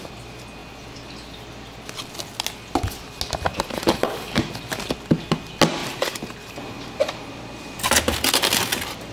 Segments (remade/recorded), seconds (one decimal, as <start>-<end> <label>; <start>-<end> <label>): 0.0-3.5 recorded; 3.5-4.5 remade; 4.5-5.8 recorded; 5.8-7.3 remade; 7.3-9.1 recorded